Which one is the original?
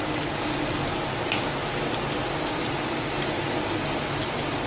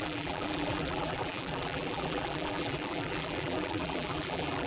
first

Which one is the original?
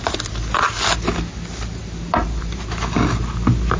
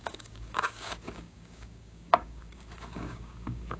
first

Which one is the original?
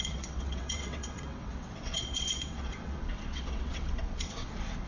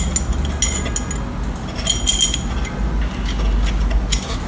second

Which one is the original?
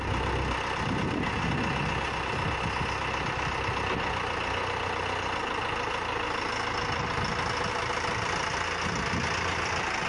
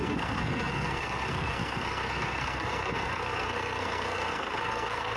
first